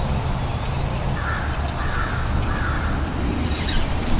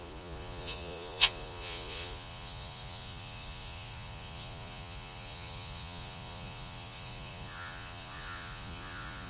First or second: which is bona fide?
first